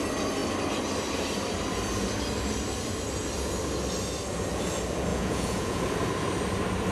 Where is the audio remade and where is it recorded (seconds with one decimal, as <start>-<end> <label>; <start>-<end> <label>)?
0.0-5.1 recorded; 5.1-5.8 remade; 5.8-6.9 recorded